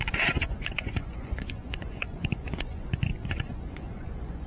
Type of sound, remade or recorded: remade